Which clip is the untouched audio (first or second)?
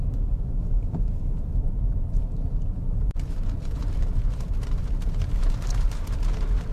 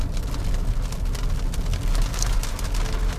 second